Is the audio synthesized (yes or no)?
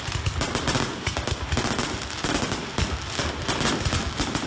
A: no